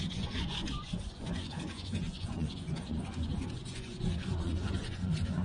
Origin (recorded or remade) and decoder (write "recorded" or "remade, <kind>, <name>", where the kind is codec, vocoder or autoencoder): remade, vocoder, Vocos